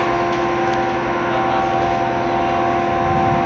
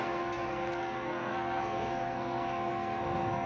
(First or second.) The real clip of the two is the first